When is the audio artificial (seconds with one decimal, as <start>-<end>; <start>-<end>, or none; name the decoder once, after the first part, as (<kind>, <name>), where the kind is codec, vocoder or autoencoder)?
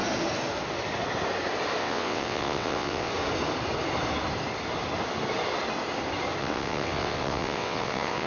1.8-3.1 (vocoder, WaveNeXt); 6.4-8.3